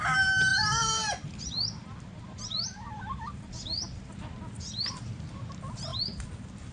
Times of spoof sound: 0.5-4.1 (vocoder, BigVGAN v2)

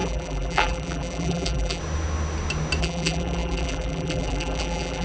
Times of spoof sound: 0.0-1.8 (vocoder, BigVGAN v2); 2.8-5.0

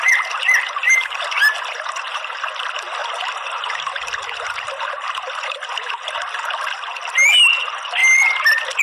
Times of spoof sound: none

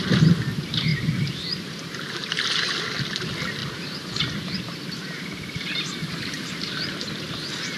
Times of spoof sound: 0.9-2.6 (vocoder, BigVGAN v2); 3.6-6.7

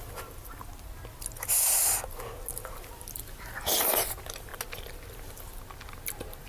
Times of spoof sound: none